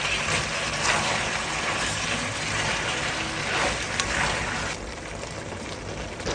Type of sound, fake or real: real